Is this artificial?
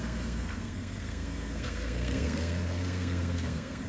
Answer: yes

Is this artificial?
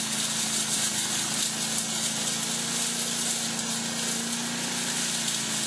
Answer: no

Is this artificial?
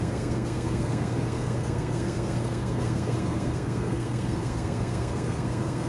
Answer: yes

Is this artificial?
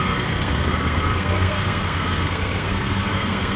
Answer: yes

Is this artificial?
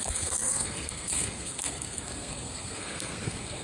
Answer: yes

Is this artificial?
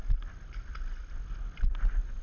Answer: no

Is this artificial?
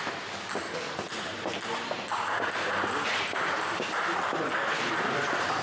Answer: no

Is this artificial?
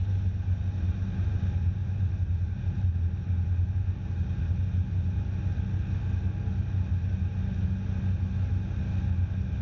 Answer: no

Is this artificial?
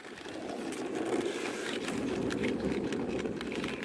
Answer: no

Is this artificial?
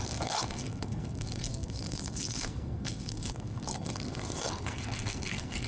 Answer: yes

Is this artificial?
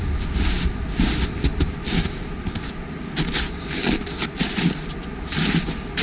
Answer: no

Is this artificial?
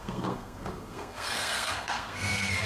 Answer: yes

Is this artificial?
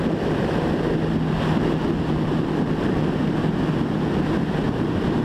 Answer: no